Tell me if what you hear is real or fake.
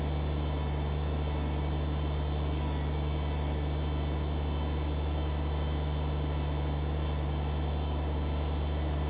real